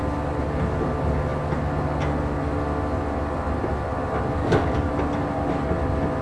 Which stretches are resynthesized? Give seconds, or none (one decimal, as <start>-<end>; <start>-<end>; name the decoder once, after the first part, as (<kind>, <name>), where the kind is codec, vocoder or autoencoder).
4.4-4.9 (codec, DAC)